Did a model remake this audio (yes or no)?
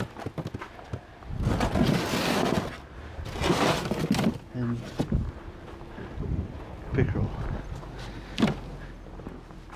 no